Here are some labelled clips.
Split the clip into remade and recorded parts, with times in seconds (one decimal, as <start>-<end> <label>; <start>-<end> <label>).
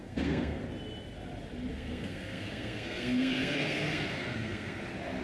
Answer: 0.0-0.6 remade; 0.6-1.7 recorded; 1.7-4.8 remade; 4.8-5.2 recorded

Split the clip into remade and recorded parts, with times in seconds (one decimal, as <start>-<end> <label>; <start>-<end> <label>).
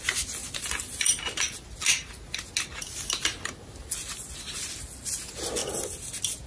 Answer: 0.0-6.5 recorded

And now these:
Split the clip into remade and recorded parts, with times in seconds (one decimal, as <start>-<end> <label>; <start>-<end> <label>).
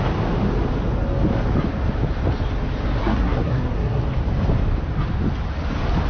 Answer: 0.0-3.0 recorded; 3.0-4.0 remade; 4.0-6.1 recorded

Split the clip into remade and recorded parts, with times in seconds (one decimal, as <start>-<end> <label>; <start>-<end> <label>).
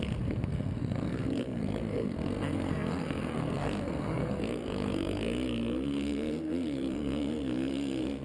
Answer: 0.0-8.2 remade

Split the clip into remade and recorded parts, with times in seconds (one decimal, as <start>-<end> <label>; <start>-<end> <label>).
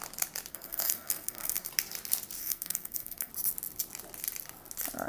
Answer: 0.0-0.5 recorded; 0.5-1.7 remade; 1.7-2.4 recorded; 2.4-3.3 remade; 3.3-5.1 recorded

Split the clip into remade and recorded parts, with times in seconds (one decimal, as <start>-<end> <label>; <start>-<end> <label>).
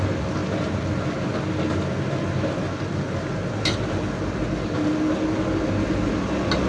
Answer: 0.0-6.7 recorded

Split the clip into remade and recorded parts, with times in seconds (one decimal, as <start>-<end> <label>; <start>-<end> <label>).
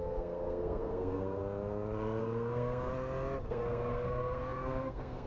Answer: 0.0-1.4 remade; 1.4-2.2 recorded; 2.2-2.9 remade; 2.9-3.5 recorded; 3.5-5.3 remade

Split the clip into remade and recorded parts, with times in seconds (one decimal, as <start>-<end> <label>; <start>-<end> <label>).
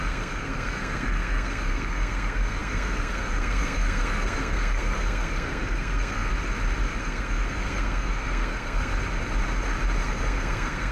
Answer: 0.0-6.3 remade; 6.3-7.0 recorded; 7.0-8.9 remade; 8.9-10.0 recorded; 10.0-10.9 remade